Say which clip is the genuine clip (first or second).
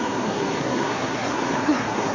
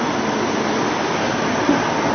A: second